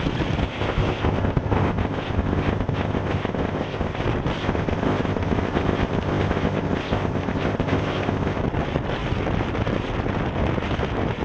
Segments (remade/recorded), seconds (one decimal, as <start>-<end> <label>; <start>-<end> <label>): 0.0-0.4 recorded; 0.4-4.0 remade; 4.0-4.4 recorded; 4.4-8.4 remade; 8.4-11.2 recorded

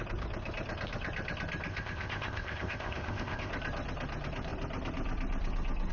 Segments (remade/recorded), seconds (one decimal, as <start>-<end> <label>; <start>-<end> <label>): 0.0-1.7 recorded; 1.7-3.5 remade; 3.5-5.9 recorded

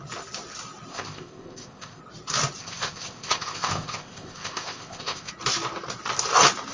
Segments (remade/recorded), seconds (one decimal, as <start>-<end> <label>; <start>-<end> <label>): 0.0-0.9 recorded; 0.9-2.0 remade; 2.0-2.6 recorded; 2.6-5.3 remade; 5.3-6.7 recorded

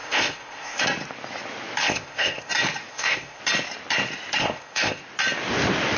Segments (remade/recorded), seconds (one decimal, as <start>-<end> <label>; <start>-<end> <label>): 0.0-0.8 remade; 0.8-1.8 recorded; 1.8-2.5 remade; 2.5-2.9 recorded; 2.9-3.4 remade; 3.4-4.4 recorded; 4.4-5.0 remade; 5.0-6.0 recorded

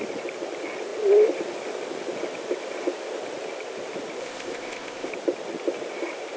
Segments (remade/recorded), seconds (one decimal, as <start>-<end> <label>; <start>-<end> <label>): 0.0-4.2 recorded; 4.2-5.1 remade; 5.1-6.4 recorded

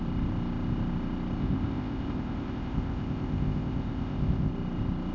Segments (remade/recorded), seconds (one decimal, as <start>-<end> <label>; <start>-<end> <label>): 0.0-1.4 recorded; 1.4-4.5 remade; 4.5-5.1 recorded

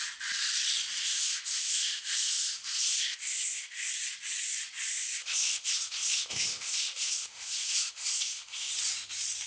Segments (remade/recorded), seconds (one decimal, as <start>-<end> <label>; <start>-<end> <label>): 0.0-1.0 recorded; 1.0-3.9 remade; 3.9-4.9 recorded; 4.9-8.7 remade; 8.7-9.5 recorded

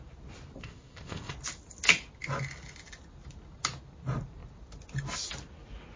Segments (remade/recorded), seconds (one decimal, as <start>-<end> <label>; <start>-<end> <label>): 0.0-0.6 recorded; 0.6-1.3 remade; 1.3-6.0 recorded